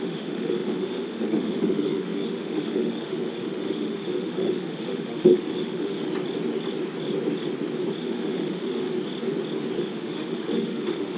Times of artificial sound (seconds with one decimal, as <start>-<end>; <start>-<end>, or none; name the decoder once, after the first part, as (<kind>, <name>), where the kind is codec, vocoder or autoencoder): 0.0-6.1 (autoencoder, DAC-VAE); 8.0-8.9; 9.8-11.2